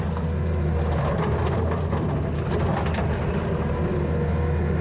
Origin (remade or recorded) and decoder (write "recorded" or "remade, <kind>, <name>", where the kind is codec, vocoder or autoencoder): recorded